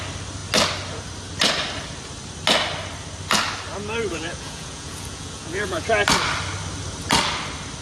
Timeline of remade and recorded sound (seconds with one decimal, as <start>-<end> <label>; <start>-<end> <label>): 0.0-4.1 recorded; 4.1-5.9 remade; 5.9-7.8 recorded